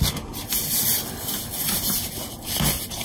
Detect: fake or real real